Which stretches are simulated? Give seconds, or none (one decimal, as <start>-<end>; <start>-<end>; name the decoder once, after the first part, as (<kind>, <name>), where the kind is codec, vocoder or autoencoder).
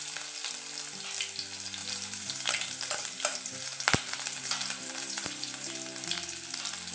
1.8-5.7 (vocoder, BigVGAN v2)